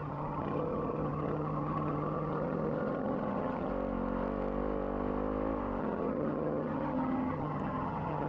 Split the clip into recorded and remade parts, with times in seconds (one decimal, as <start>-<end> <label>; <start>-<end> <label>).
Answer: 0.0-3.7 remade; 3.7-5.8 recorded; 5.8-8.3 remade